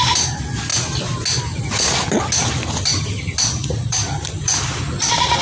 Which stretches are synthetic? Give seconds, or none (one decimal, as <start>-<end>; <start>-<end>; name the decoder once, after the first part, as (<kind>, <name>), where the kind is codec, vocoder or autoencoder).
3.6-5.4 (vocoder, BigVGAN v2)